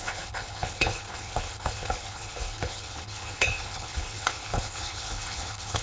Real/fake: fake